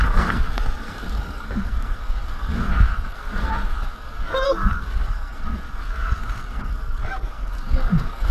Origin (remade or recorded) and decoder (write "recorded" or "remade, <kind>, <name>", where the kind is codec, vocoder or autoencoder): remade, codec, SNAC